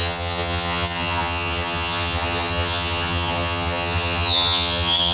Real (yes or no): no